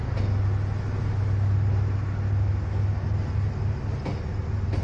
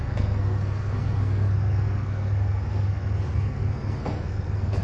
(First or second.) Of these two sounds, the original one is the first